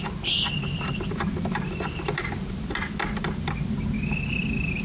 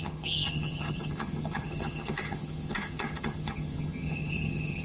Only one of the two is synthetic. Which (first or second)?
second